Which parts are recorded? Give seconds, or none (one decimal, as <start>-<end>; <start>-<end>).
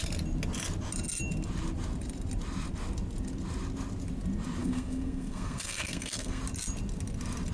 0.0-4.6; 6.4-7.5